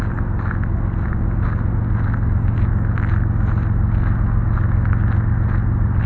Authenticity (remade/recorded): recorded